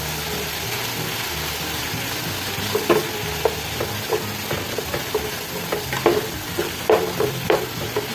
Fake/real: real